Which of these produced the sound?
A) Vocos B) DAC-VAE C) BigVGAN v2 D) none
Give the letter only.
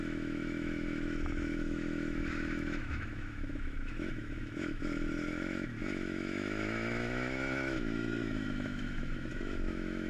B